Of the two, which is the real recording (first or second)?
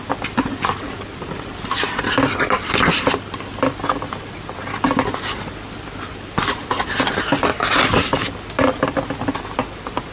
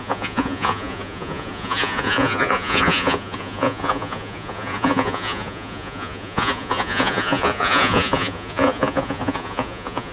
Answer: first